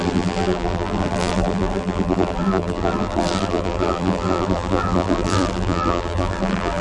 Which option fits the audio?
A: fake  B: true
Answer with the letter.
A